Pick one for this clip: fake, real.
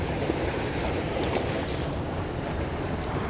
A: fake